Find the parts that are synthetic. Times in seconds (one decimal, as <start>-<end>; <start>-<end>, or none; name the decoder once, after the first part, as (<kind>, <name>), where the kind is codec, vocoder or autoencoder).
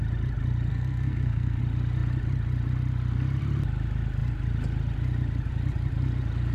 0.7-1.6 (codec, SNAC)